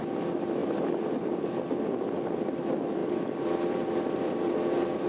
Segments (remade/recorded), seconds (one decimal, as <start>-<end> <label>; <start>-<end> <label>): 0.0-0.6 recorded; 0.6-2.6 remade; 2.6-3.0 recorded; 3.0-4.3 remade; 4.3-5.1 recorded